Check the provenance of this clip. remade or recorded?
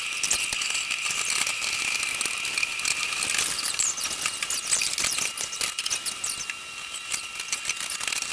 recorded